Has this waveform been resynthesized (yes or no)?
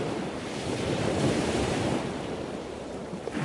yes